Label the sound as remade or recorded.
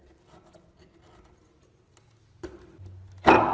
recorded